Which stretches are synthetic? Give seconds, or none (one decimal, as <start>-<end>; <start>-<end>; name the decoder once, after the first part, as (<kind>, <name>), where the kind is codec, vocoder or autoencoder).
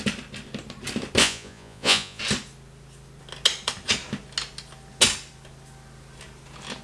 1.2-2.2 (vocoder, Vocos)